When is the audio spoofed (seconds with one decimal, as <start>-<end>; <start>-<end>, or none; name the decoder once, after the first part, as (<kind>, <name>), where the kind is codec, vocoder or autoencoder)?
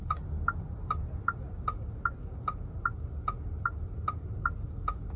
none